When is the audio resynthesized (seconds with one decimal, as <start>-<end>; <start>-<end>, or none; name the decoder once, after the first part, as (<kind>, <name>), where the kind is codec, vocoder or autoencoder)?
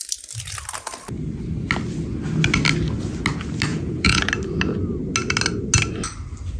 3.7-4.3 (vocoder, Vocos)